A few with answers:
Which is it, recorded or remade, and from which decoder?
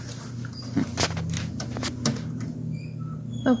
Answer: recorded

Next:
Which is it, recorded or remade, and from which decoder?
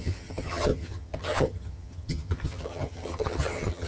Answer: remade, vocoder, HiFi-GAN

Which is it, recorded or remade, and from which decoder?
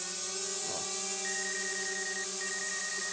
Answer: recorded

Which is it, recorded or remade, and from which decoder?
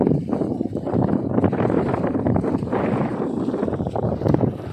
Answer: remade, vocoder, BigVGAN v2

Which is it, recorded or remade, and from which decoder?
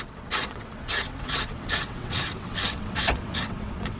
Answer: remade, vocoder, WaveNeXt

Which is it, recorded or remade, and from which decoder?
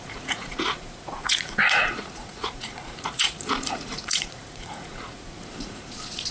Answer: remade, vocoder, Vocos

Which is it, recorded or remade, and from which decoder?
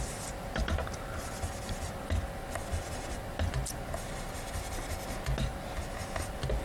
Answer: recorded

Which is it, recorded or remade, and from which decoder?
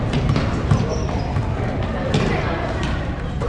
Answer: remade, vocoder, BigVGAN v2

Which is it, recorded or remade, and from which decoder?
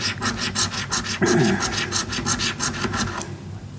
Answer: recorded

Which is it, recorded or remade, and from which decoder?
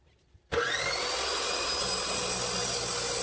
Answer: recorded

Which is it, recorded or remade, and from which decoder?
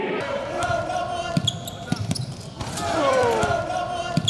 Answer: remade, vocoder, BigVGAN v2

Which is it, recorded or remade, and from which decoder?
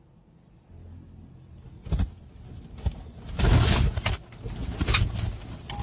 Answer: recorded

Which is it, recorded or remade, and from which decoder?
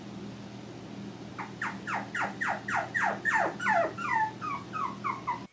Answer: recorded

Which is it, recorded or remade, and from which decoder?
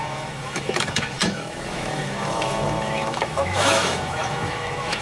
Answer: remade, autoencoder, DAC-VAE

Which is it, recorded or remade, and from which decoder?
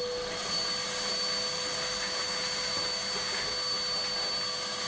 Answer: recorded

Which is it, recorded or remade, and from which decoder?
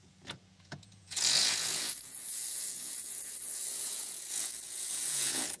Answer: remade, vocoder, Vocos